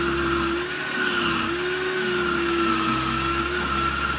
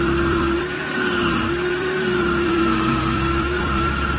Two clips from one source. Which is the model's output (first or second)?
second